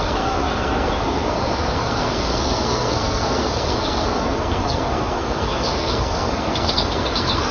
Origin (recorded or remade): remade